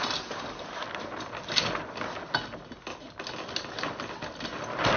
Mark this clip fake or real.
real